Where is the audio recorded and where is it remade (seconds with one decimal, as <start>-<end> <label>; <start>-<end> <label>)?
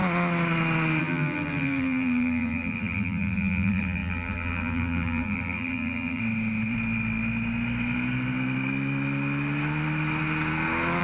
0.0-1.0 recorded; 1.0-6.2 remade; 6.2-11.0 recorded